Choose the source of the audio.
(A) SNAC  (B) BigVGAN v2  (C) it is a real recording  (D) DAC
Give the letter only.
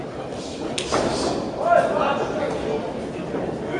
C